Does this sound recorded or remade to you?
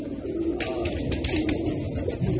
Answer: recorded